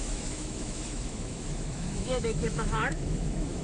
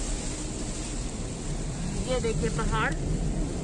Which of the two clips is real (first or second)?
second